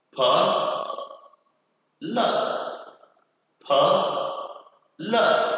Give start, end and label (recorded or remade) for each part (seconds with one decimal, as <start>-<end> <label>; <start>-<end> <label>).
0.0-0.8 recorded; 0.8-1.5 remade; 1.5-5.6 recorded